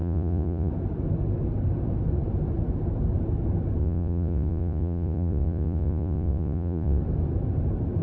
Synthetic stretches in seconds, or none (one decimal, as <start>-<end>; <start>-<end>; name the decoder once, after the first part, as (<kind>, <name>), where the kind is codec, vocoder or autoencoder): 0.0-0.7 (vocoder, Vocos); 3.8-7.0